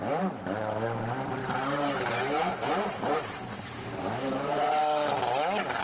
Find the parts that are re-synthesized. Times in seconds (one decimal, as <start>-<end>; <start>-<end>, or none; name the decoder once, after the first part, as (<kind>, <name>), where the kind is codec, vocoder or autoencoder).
0.0-4.8 (vocoder, BigVGAN v2)